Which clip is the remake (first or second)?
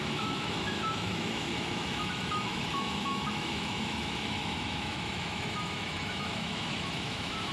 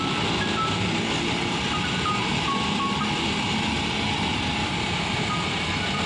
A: first